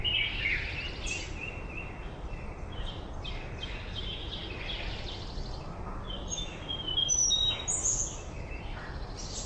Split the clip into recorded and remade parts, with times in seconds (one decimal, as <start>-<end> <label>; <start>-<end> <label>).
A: 0.0-9.5 recorded